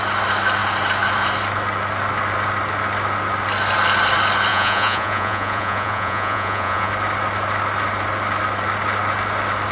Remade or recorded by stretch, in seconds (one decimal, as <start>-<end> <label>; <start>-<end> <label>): 0.0-4.5 recorded; 4.5-6.9 remade; 6.9-9.7 recorded